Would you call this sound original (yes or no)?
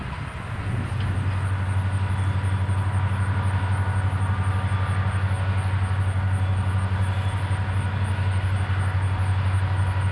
yes